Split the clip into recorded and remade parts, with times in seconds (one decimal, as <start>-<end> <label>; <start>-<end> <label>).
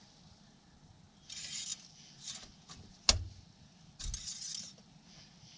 0.0-5.6 recorded